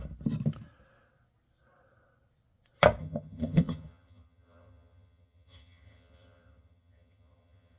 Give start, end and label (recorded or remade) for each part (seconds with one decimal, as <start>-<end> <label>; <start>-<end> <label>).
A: 0.0-3.0 recorded; 3.0-7.8 remade